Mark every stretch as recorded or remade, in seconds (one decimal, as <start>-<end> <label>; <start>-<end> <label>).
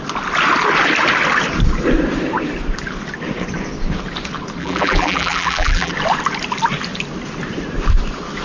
0.0-4.6 recorded; 4.6-5.9 remade; 5.9-8.4 recorded